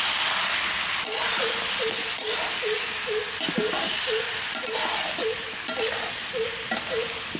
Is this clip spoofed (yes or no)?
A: no